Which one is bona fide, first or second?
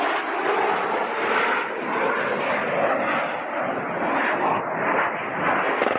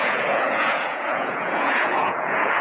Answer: first